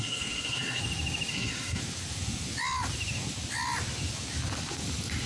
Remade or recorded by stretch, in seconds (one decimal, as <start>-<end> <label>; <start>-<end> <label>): 0.0-0.8 remade; 0.8-1.3 recorded; 1.3-1.8 remade; 1.8-5.3 recorded